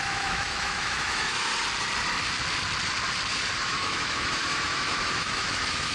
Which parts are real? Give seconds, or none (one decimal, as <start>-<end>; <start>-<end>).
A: 1.5-3.6